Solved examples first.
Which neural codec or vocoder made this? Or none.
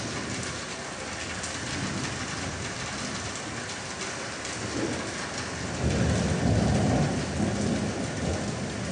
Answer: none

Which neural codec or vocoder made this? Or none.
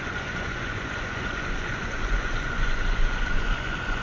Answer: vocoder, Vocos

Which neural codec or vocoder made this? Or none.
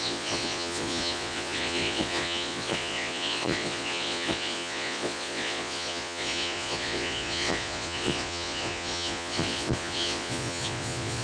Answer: vocoder, Vocos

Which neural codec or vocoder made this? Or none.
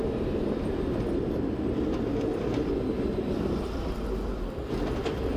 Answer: none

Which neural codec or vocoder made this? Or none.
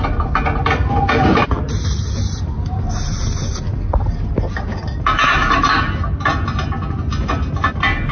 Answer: none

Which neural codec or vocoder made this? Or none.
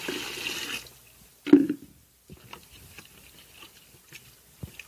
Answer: none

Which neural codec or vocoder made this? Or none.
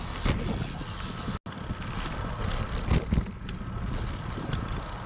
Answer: none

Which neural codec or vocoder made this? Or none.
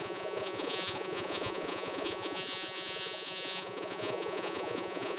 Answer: vocoder, Vocos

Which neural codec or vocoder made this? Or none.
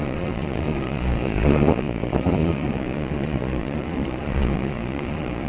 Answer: vocoder, Vocos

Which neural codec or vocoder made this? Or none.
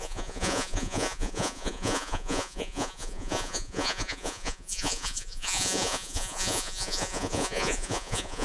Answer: vocoder, Vocos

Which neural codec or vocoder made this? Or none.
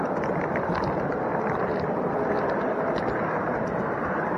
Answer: none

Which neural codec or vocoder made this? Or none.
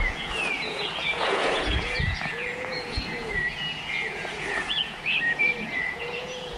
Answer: vocoder, Vocos